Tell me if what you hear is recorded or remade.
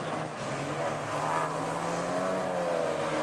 recorded